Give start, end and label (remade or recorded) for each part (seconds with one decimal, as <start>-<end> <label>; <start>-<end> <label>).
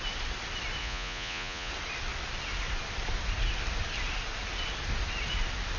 0.0-0.8 recorded; 0.8-1.7 remade; 1.7-5.8 recorded